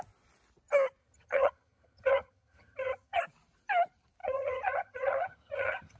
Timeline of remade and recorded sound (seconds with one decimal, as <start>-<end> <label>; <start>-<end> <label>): 0.0-1.0 recorded; 1.0-3.2 remade; 3.2-4.2 recorded; 4.2-6.0 remade